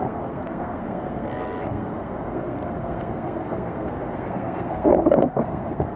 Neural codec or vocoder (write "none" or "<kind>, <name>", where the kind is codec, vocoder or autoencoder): codec, SNAC